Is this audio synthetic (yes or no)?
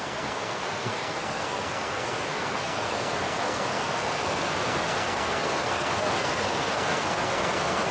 yes